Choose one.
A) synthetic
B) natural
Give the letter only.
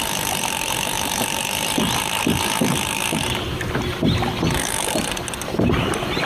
B